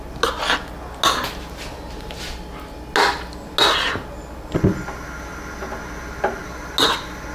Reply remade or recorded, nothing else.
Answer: recorded